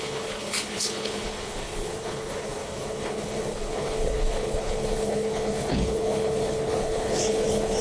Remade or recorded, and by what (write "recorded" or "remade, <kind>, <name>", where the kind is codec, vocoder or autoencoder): remade, codec, HILCodec